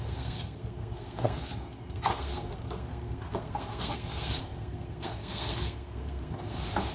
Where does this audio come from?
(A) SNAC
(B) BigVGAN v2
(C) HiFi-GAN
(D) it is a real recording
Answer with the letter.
A